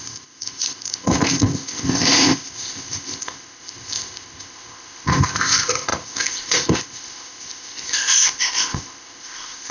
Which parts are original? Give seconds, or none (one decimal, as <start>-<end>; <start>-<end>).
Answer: none